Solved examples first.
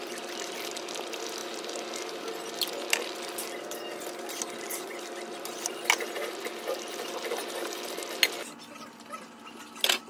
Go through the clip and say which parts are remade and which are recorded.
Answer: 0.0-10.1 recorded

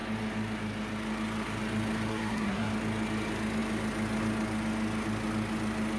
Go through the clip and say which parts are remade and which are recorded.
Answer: 0.0-2.1 recorded; 2.1-2.7 remade; 2.7-6.0 recorded

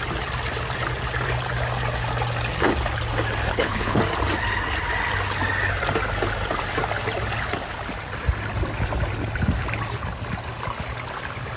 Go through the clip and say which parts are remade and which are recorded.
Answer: 0.0-3.5 recorded; 3.5-4.0 remade; 4.0-11.6 recorded

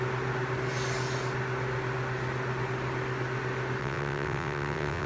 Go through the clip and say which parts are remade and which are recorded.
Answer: 0.0-3.8 recorded; 3.8-5.1 remade

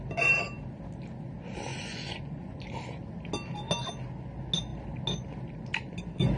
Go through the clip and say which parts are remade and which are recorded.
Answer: 0.0-1.7 recorded; 1.7-2.6 remade; 2.6-6.4 recorded

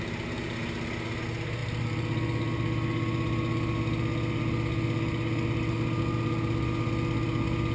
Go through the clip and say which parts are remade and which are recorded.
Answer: 0.0-7.7 recorded